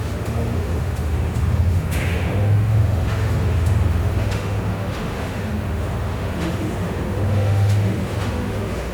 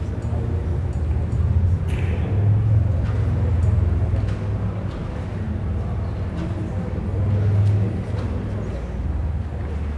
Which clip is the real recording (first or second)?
second